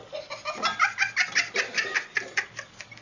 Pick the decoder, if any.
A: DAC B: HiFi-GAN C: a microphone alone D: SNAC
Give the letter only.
C